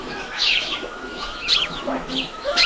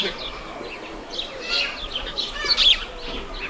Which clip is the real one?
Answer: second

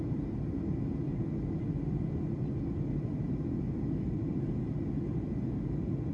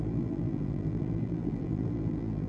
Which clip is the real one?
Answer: first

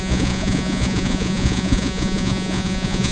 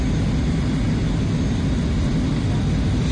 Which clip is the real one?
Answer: second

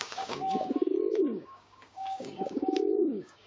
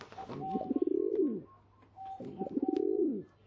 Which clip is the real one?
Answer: second